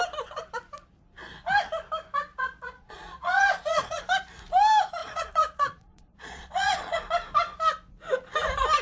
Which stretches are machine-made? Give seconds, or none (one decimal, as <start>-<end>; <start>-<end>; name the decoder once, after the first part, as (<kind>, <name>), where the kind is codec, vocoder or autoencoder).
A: 2.3-4.0 (vocoder, Vocos); 5.0-7.0